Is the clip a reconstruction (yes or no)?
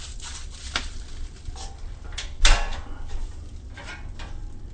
yes